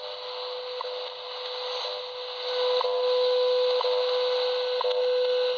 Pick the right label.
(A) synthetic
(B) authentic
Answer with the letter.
B